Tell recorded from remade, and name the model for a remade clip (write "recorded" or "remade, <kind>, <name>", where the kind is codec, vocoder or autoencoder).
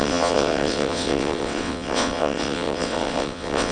remade, vocoder, WaveNeXt